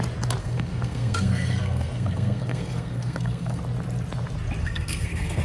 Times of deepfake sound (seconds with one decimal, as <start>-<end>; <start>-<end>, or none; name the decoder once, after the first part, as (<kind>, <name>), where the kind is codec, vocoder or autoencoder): 0.4-3.6 (codec, SNAC); 4.6-5.4